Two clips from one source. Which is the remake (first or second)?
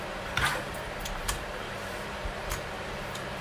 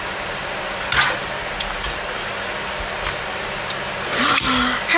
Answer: first